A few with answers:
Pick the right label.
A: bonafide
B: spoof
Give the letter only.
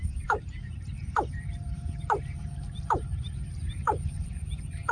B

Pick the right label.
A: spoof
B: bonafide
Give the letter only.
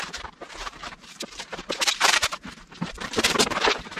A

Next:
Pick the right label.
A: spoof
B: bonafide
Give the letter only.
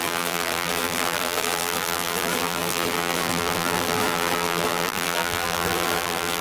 A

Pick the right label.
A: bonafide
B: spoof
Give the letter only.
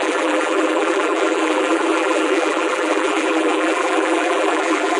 B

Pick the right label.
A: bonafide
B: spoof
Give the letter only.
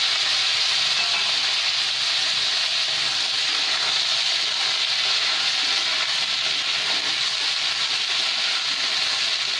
A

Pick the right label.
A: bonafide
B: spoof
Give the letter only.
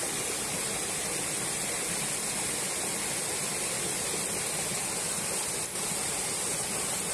A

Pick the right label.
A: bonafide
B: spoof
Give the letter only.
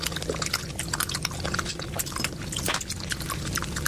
A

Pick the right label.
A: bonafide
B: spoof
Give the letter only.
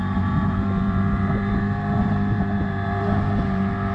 B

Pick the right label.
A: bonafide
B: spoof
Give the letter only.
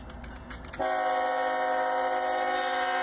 A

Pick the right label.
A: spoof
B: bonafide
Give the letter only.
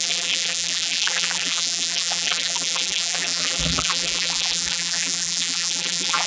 A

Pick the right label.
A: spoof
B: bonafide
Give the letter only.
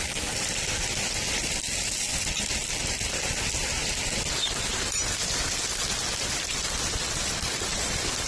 B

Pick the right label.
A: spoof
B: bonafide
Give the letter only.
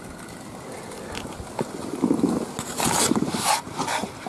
B